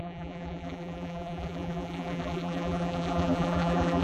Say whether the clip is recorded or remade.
remade